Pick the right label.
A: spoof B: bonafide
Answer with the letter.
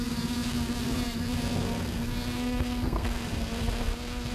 A